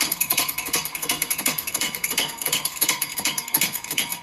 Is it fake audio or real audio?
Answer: fake